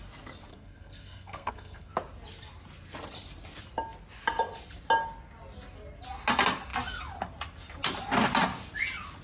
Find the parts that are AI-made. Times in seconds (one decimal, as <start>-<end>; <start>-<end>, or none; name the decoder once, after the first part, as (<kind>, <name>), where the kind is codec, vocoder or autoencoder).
0.5-1.9 (codec, SNAC)